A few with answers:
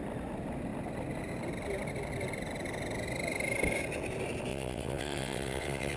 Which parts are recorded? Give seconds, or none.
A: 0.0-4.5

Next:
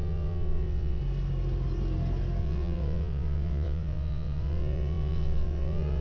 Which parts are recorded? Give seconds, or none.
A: 1.0-2.4

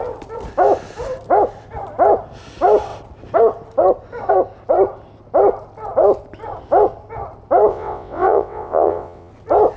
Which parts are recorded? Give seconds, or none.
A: 0.0-7.7; 9.3-9.8

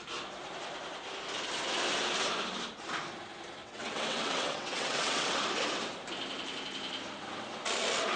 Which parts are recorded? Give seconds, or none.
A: 0.0-3.6; 5.4-8.2

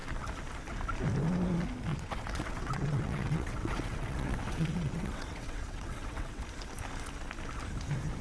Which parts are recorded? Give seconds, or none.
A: 0.0-1.9; 6.4-8.2

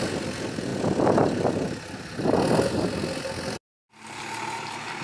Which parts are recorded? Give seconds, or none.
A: 0.0-5.0

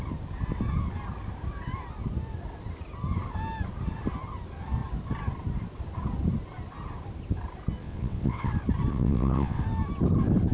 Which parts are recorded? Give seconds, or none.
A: 0.0-7.8; 8.5-8.9; 9.6-10.5